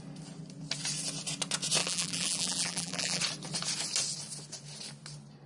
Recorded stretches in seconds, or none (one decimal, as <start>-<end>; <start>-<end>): 0.0-1.8; 3.2-5.5